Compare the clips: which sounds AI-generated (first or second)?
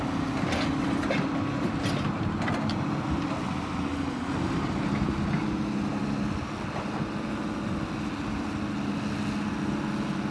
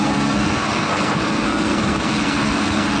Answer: second